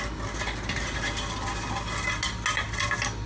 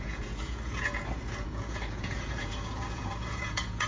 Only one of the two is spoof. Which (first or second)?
second